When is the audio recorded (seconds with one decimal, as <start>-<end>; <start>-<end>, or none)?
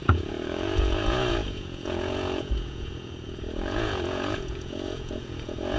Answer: none